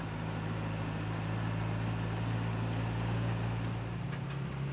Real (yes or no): yes